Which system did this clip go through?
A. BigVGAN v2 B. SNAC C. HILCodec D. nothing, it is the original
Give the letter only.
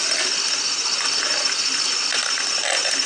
D